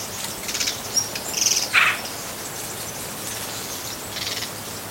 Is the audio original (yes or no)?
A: yes